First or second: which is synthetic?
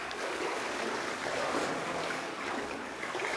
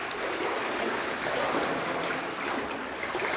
first